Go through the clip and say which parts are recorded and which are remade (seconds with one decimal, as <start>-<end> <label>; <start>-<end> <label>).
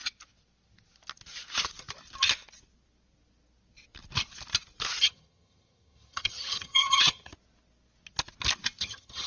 0.0-5.0 recorded; 5.0-7.3 remade; 7.3-8.8 recorded; 8.8-9.3 remade